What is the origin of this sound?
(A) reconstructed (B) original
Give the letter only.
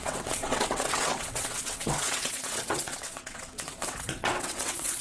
A